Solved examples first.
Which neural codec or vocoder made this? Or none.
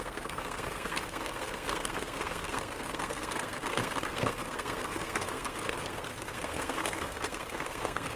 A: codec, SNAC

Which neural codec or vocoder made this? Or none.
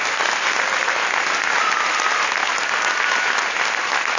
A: none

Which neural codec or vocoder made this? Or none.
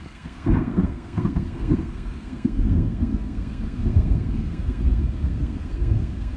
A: codec, SNAC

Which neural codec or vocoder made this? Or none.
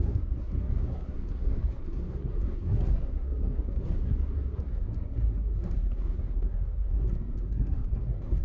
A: codec, SNAC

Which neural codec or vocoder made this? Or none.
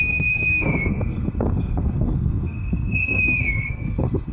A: codec, SNAC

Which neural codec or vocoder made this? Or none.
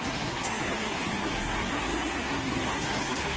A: codec, SNAC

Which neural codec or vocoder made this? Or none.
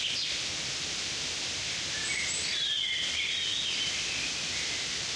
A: none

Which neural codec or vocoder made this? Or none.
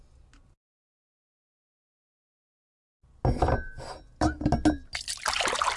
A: none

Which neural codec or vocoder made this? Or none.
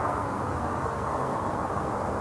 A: codec, SNAC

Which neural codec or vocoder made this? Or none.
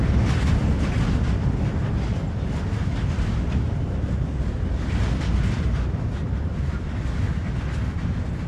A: none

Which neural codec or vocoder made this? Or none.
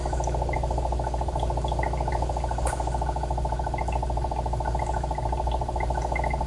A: none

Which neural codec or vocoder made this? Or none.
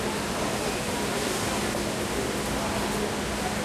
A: none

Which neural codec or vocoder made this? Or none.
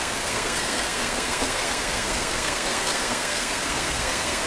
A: codec, SNAC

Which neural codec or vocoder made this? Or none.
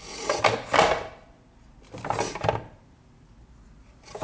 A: none